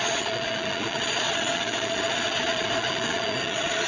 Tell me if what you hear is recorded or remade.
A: remade